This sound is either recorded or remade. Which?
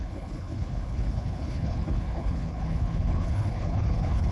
remade